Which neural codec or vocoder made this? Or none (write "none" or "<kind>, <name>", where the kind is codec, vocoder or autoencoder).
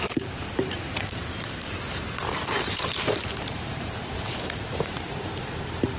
vocoder, BigVGAN v2